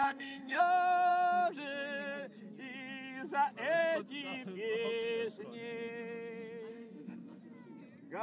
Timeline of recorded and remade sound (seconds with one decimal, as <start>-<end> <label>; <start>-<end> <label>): 0.0-0.6 remade; 0.6-6.7 recorded; 6.7-7.4 remade; 7.4-8.2 recorded